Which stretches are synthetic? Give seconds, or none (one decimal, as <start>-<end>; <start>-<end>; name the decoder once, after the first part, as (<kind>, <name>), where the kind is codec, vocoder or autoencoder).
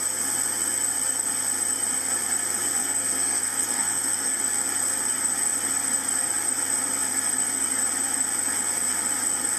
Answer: 2.8-4.4 (codec, SNAC)